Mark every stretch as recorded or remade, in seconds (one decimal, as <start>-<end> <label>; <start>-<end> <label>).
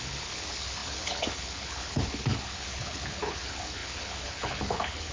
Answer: 0.0-5.1 remade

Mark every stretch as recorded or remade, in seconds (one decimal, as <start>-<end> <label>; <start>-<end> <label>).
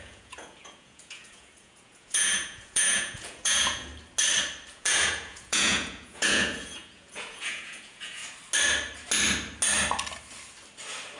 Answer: 0.0-3.9 remade; 3.9-4.7 recorded; 4.7-8.2 remade; 8.2-11.2 recorded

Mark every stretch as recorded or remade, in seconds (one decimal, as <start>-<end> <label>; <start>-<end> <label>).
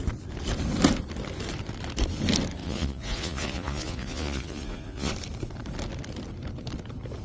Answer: 0.0-2.6 recorded; 2.6-5.1 remade; 5.1-7.2 recorded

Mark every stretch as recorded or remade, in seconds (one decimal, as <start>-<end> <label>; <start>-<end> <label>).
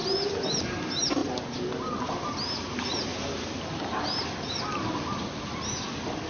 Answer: 0.0-6.3 recorded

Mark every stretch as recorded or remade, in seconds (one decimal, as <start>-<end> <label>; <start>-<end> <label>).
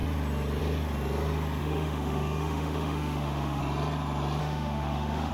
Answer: 0.0-1.6 recorded; 1.6-3.6 remade; 3.6-4.4 recorded; 4.4-5.3 remade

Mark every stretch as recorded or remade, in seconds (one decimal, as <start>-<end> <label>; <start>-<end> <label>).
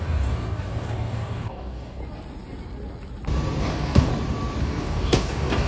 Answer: 0.0-2.0 remade; 2.0-3.6 recorded; 3.6-4.1 remade; 4.1-4.6 recorded; 4.6-5.7 remade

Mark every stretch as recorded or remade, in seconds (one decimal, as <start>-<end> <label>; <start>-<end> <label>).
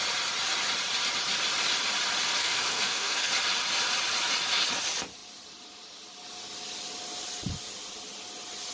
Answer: 0.0-2.4 recorded; 2.4-3.3 remade; 3.3-8.7 recorded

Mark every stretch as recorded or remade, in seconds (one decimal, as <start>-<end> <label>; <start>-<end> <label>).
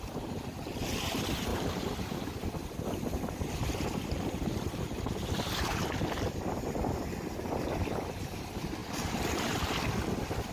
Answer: 0.0-10.5 recorded